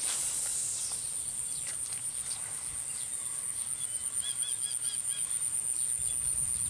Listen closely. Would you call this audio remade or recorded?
recorded